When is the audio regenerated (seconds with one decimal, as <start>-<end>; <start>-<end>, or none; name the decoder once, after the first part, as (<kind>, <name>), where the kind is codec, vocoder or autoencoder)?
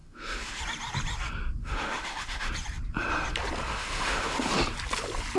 0.0-0.6 (autoencoder, DAC-VAE); 1.6-2.5; 3.7-4.6